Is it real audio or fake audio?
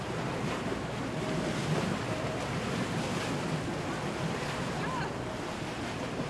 real